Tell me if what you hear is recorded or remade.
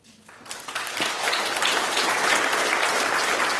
recorded